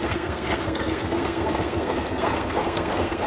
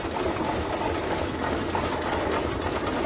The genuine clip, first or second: second